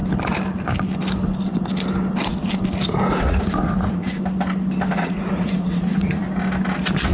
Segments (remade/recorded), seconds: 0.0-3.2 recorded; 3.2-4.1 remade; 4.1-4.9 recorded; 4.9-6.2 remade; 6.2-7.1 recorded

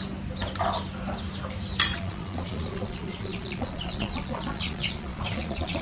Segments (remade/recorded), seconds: 0.0-1.9 recorded; 1.9-5.8 remade